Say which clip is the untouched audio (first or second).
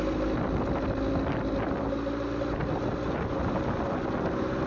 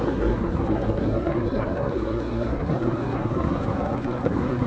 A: first